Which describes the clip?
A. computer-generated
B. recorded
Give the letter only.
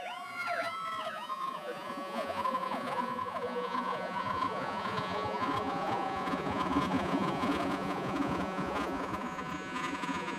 A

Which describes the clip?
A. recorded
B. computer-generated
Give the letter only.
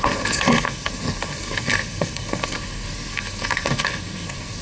B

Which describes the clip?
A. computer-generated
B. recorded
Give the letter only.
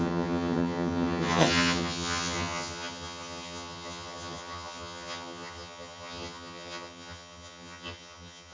A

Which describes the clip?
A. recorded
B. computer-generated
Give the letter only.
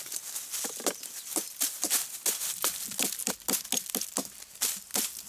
A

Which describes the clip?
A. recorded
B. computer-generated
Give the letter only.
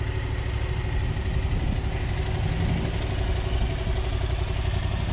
A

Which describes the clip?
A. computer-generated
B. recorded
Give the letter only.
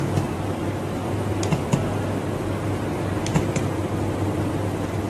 B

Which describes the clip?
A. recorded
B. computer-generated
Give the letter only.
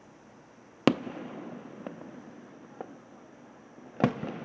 A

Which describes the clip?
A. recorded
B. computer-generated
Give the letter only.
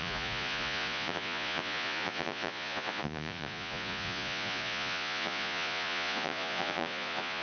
B